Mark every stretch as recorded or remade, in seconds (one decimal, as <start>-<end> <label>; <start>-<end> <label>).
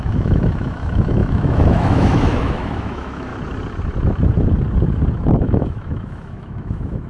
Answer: 0.0-3.3 remade; 3.3-5.3 recorded; 5.3-7.1 remade